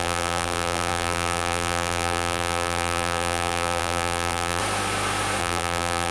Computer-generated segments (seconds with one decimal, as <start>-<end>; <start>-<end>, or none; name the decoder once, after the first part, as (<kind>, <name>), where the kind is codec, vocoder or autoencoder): 0.0-4.6 (vocoder, BigVGAN v2); 5.4-6.1